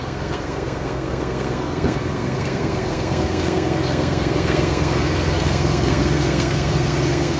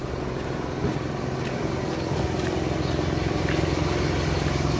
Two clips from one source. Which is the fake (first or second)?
first